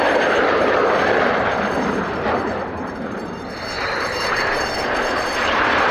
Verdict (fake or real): fake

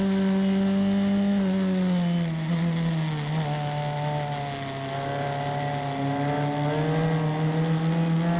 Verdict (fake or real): real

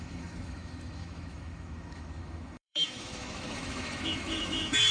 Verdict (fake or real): fake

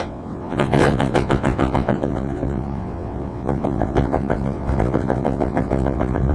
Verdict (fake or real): fake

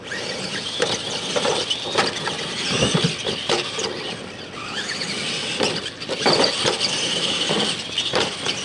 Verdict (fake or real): fake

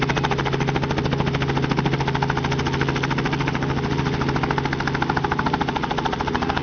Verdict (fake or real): real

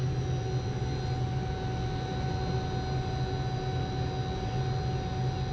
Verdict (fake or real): real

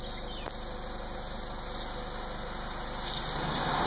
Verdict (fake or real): real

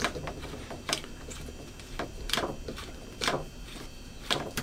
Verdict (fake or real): fake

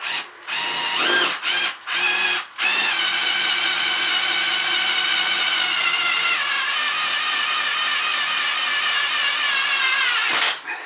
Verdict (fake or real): real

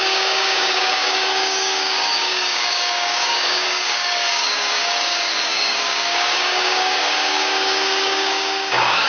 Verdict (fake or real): fake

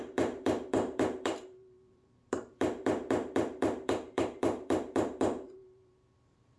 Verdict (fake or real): fake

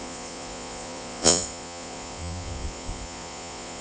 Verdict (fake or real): fake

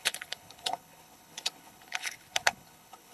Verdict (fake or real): fake